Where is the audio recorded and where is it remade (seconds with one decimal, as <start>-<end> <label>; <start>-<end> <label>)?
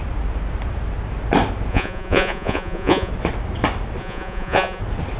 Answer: 0.0-1.7 recorded; 1.7-3.1 remade; 3.1-4.0 recorded; 4.0-4.8 remade; 4.8-5.2 recorded